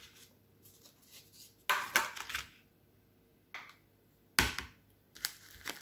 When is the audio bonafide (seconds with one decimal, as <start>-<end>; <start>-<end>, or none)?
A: 0.0-5.8